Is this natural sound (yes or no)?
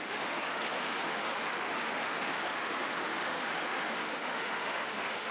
no